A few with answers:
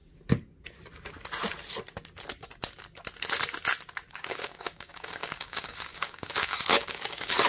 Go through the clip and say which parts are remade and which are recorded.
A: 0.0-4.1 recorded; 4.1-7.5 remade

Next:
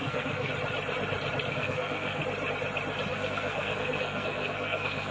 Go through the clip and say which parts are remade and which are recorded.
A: 0.0-0.5 remade; 0.5-1.5 recorded; 1.5-2.2 remade; 2.2-3.1 recorded; 3.1-5.1 remade

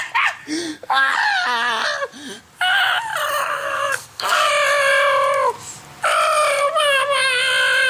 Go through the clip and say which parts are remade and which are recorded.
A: 0.0-0.4 recorded; 0.4-1.1 remade; 1.1-3.4 recorded; 3.4-4.5 remade; 4.5-7.9 recorded

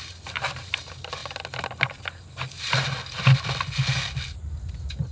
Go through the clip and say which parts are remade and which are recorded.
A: 0.0-5.1 recorded